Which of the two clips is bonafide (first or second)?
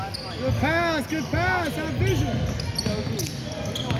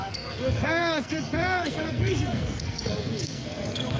first